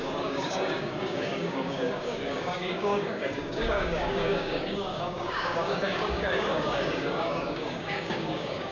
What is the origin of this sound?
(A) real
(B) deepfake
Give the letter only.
B